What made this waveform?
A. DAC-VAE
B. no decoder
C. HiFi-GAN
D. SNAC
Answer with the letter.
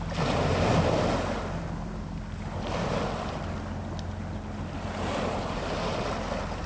B